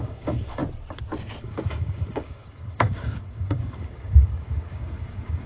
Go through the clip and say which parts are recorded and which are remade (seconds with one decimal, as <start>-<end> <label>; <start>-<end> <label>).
0.0-0.6 remade; 0.6-1.4 recorded; 1.4-5.5 remade